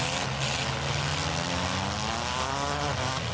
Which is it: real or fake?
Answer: real